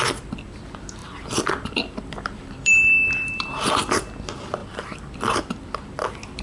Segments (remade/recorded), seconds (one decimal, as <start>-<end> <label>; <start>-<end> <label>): 0.0-1.0 recorded; 1.0-3.7 remade; 3.7-4.6 recorded; 4.6-5.7 remade; 5.7-6.4 recorded